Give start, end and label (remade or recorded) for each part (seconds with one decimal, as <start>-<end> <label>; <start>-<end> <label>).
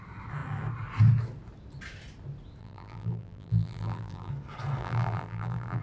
0.0-2.6 recorded; 2.6-4.3 remade; 4.3-4.8 recorded; 4.8-5.8 remade